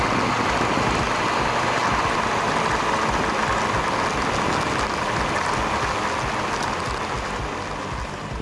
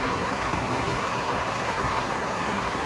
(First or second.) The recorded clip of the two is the first